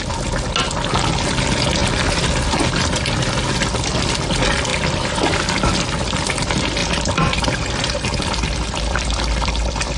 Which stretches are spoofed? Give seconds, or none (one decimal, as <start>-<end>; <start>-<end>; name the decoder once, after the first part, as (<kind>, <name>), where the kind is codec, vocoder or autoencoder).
6.8-10.0 (vocoder, BigVGAN v2)